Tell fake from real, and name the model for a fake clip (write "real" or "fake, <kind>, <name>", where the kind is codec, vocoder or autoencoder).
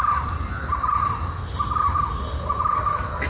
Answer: real